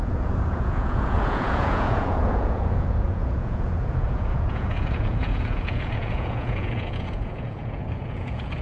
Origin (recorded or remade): remade